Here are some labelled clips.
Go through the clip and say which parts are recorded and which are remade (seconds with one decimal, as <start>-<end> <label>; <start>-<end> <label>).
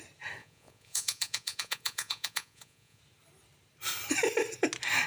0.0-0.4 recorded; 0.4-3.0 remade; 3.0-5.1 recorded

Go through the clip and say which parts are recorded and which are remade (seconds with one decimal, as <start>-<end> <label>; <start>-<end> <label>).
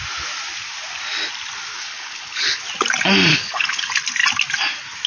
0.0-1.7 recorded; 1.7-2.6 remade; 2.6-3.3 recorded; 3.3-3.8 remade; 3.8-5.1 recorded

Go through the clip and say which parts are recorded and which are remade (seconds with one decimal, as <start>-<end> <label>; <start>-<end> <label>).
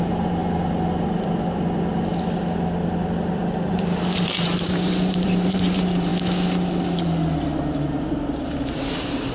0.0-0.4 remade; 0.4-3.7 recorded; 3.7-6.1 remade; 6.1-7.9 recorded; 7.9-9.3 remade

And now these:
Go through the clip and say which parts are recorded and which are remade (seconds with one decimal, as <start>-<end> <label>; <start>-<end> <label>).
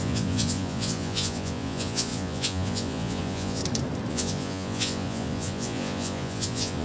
0.0-3.6 remade; 3.6-4.1 recorded; 4.1-6.8 remade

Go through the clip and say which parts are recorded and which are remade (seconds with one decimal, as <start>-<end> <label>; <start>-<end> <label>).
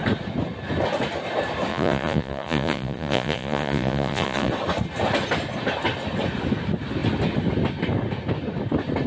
0.0-1.7 recorded; 1.7-4.5 remade; 4.5-9.1 recorded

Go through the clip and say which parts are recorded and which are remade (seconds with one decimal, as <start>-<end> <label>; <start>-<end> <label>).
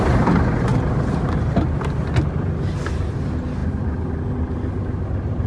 0.0-5.5 recorded